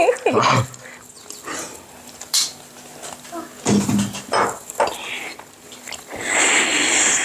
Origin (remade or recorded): recorded